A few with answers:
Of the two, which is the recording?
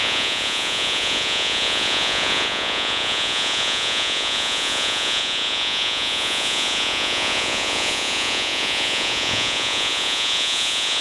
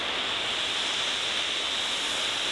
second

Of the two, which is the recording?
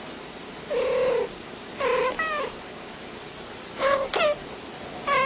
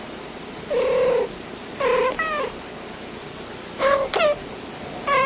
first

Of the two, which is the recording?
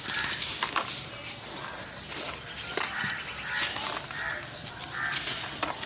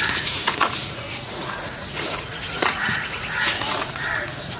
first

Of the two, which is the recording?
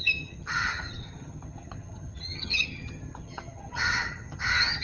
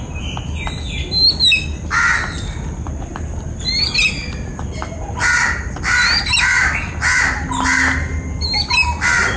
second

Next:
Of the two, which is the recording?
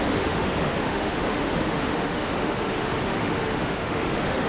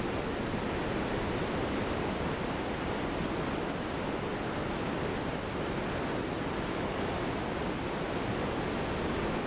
second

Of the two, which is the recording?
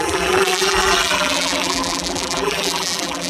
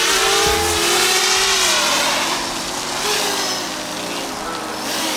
second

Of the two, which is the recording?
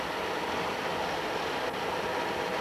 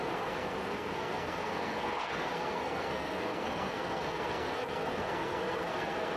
first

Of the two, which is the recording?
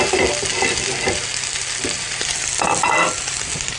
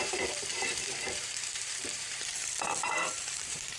first